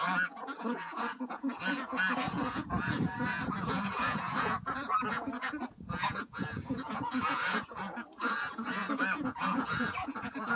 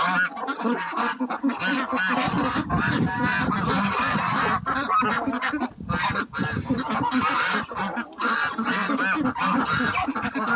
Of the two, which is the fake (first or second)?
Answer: first